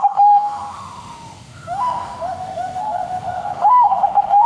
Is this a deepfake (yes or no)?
yes